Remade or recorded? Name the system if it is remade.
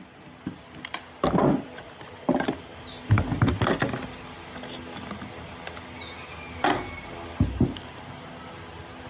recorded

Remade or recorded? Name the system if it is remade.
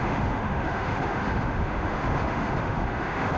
remade, autoencoder, DAC-VAE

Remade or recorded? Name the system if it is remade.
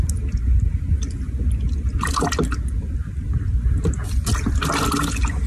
recorded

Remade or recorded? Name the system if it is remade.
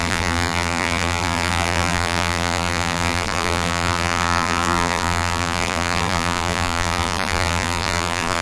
remade, vocoder, BigVGAN v2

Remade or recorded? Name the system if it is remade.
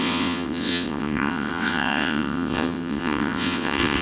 remade, vocoder, WaveNeXt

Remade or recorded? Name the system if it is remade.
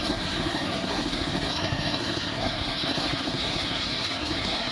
remade, codec, SNAC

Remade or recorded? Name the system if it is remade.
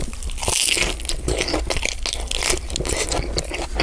recorded